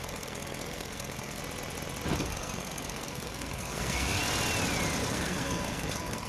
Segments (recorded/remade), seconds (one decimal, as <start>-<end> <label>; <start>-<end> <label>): 0.0-1.4 remade; 1.4-2.2 recorded; 2.2-4.2 remade; 4.2-5.1 recorded; 5.1-6.3 remade

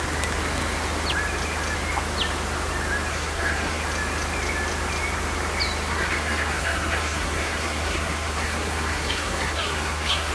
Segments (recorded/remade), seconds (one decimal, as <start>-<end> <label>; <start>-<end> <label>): 0.0-3.1 recorded; 3.1-3.8 remade; 3.8-5.9 recorded; 5.9-10.3 remade

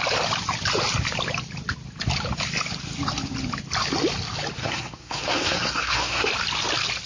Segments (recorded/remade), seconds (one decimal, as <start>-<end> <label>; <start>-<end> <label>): 0.0-4.6 recorded; 4.6-6.3 remade; 6.3-7.1 recorded

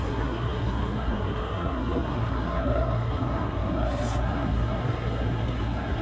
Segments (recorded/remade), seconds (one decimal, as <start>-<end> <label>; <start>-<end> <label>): 0.0-6.0 remade

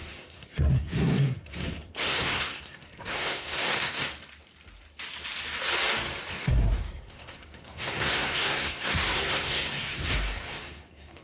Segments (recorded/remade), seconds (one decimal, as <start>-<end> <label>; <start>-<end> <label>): 0.0-4.1 remade; 4.1-6.3 recorded; 6.3-11.2 remade

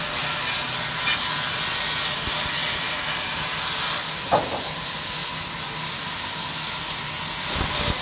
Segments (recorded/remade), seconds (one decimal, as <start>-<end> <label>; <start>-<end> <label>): 0.0-8.0 recorded